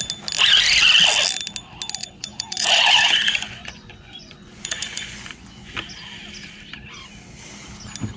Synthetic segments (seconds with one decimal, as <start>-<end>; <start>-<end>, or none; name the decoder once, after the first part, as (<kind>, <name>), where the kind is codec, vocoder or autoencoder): 2.0-5.7 (vocoder, Vocos)

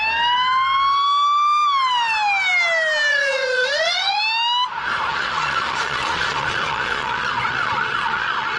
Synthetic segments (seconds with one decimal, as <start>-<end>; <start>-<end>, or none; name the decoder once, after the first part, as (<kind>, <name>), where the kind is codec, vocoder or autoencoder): 3.1-4.2 (vocoder, Vocos); 5.1-8.6

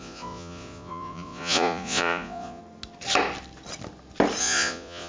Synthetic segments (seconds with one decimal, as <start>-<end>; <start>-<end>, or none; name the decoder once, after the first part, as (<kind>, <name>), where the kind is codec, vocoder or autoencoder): 0.0-2.6 (vocoder, Vocos); 4.4-5.1

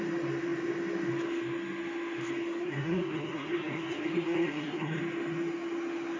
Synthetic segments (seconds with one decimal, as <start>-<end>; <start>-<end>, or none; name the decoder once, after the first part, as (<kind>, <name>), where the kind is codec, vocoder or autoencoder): 2.6-5.0 (codec, SNAC)

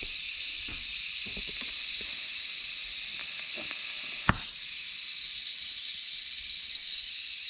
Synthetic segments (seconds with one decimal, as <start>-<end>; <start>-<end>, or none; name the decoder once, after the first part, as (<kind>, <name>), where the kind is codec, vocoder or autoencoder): 0.0-0.9 (vocoder, Vocos); 5.4-7.5

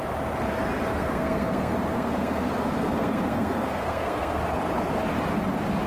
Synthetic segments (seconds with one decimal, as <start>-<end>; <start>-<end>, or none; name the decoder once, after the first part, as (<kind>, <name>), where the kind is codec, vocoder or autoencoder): 0.9-4.4 (codec, SNAC)

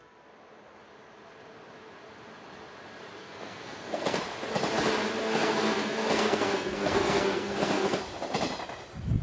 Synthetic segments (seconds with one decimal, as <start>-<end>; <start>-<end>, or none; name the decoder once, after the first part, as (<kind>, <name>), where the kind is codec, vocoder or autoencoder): 3.2-4.2 (codec, SNAC); 5.2-8.0